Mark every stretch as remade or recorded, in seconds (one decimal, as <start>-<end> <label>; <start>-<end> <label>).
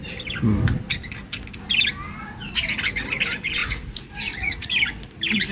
0.0-3.6 recorded; 3.6-4.7 remade; 4.7-5.5 recorded